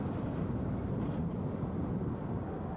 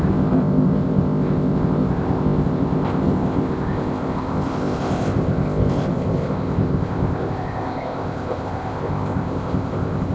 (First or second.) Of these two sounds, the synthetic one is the second